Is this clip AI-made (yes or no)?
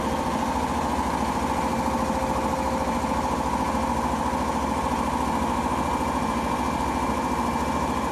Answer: no